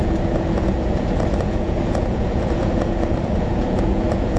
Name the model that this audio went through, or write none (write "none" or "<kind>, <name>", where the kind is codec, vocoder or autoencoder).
vocoder, Vocos